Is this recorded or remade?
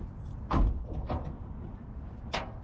recorded